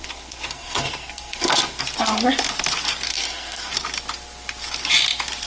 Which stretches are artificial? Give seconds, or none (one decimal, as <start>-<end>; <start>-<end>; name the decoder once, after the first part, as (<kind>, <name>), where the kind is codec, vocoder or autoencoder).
0.0-1.8 (codec, SNAC); 3.1-3.7